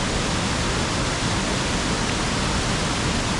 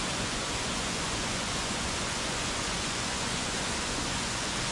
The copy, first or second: second